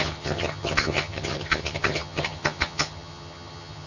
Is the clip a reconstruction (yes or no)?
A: yes